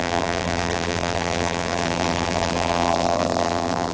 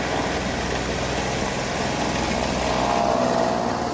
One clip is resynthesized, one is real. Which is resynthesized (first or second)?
first